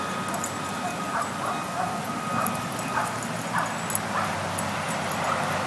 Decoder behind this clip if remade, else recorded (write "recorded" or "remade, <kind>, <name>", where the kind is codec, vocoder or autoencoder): recorded